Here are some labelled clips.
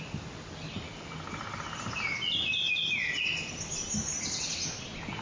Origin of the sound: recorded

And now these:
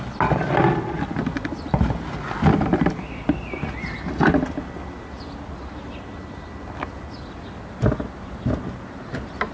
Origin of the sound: recorded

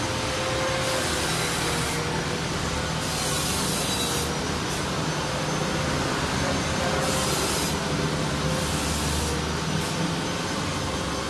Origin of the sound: recorded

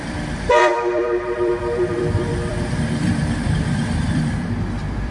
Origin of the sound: remade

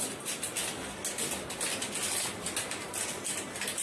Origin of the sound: recorded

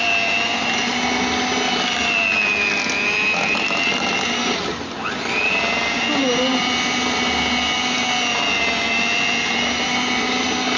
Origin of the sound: recorded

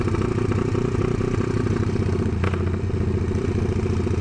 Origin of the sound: recorded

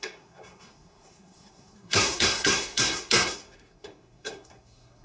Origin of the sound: remade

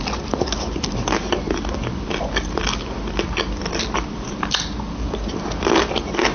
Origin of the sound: recorded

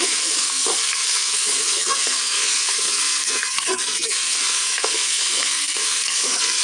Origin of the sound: remade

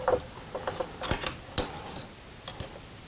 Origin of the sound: recorded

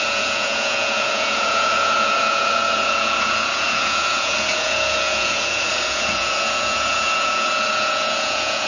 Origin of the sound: remade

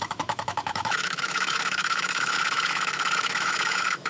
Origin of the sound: remade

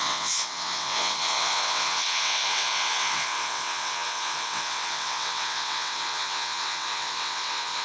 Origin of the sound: remade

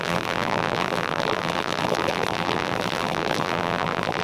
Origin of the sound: remade